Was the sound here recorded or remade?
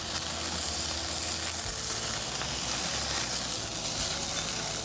recorded